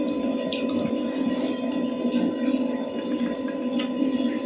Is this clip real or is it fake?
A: real